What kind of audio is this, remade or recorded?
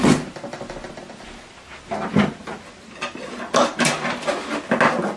recorded